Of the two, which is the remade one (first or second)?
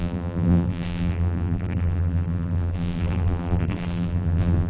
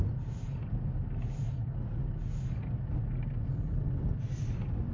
first